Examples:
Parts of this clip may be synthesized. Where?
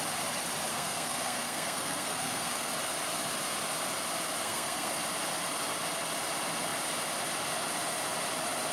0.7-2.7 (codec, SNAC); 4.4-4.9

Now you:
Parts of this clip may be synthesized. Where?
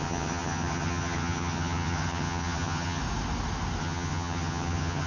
0.0-3.0 (vocoder, HiFi-GAN); 3.8-5.1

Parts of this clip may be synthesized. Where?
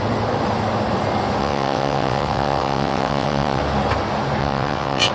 1.4-3.6 (vocoder, WaveNeXt); 4.4-5.1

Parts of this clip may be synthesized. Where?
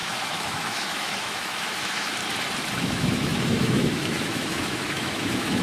0.0-2.2 (autoencoder, DAC-VAE); 2.8-5.6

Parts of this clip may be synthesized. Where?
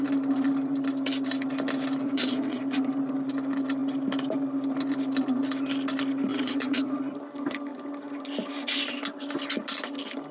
2.0-2.6 (vocoder, Vocos); 6.3-7.0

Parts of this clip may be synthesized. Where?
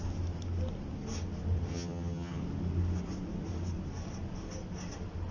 1.7-2.4 (vocoder, HiFi-GAN)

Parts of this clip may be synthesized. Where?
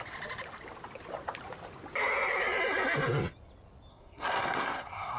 3.9-5.2 (codec, SNAC)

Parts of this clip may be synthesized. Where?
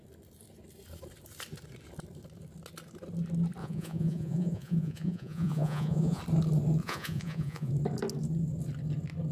3.6-6.2 (vocoder, Vocos); 6.8-7.7